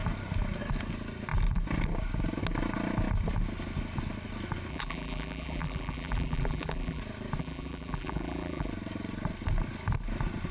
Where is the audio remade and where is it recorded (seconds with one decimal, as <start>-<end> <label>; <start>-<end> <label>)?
0.0-4.7 recorded; 4.7-7.0 remade; 7.0-7.4 recorded; 7.4-8.7 remade; 8.7-10.5 recorded